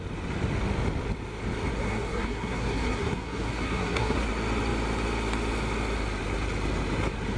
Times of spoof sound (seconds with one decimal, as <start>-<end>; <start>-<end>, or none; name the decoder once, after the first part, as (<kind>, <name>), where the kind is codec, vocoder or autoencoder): 1.7-4.3 (codec, SNAC)